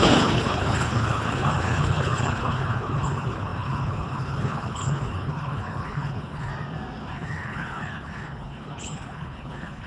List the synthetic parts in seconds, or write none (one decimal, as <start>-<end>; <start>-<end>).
0.0-6.5; 7.1-9.9